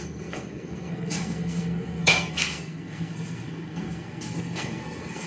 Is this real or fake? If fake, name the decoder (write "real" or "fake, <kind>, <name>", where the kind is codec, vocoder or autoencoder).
fake, codec, SNAC